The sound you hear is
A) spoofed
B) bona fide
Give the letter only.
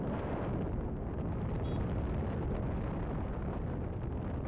B